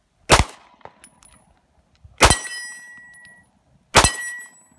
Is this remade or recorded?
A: recorded